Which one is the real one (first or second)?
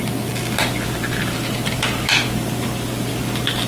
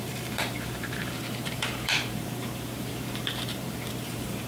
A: first